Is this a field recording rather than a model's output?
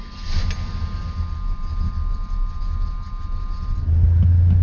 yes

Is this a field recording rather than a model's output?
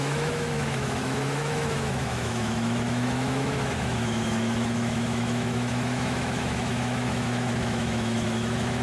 no